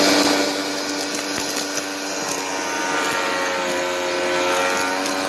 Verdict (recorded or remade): recorded